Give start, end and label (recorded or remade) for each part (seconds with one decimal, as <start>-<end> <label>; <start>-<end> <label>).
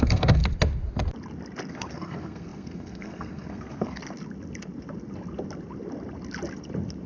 0.0-0.4 remade; 0.4-1.7 recorded; 1.7-4.0 remade; 4.0-7.1 recorded